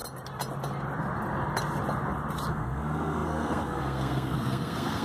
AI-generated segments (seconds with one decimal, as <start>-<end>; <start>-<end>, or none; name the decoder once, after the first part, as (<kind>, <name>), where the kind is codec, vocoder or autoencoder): 2.5-5.0 (codec, SNAC)